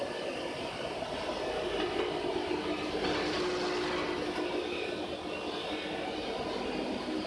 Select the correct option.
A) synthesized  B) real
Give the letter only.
B